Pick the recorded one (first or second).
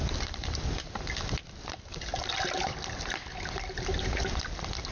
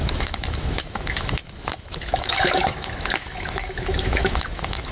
first